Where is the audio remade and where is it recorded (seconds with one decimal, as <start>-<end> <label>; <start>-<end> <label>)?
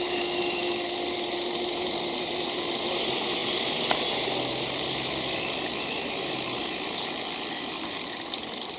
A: 0.0-8.8 recorded